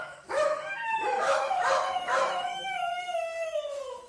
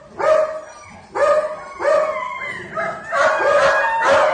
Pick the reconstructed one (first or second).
first